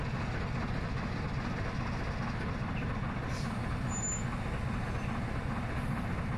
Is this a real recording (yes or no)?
yes